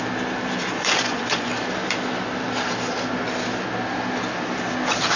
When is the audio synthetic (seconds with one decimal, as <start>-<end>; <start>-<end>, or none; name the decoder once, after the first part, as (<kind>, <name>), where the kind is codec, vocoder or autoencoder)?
0.7-1.5 (vocoder, Vocos)